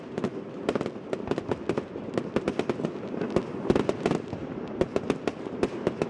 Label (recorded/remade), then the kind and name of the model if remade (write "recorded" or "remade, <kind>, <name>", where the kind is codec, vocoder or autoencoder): recorded